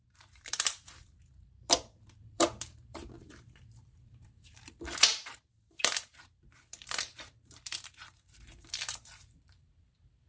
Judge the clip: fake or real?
fake